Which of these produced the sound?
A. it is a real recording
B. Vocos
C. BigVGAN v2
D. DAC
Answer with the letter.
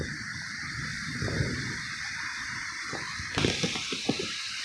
A